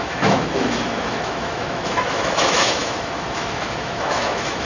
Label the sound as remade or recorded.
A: remade